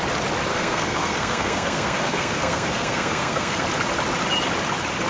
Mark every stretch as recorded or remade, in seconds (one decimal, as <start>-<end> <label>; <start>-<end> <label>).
0.0-0.5 recorded; 0.5-3.6 remade; 3.6-5.1 recorded